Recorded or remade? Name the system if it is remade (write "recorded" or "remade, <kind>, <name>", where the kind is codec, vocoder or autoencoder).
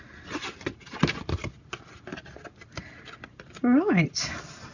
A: recorded